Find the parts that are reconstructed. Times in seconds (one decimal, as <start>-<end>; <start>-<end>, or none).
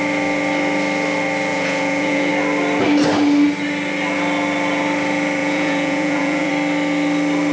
1.5-2.3; 5.4-6.5